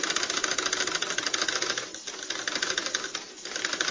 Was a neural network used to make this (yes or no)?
no